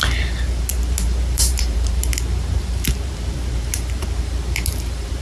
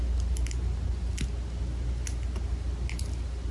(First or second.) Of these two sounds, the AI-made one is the first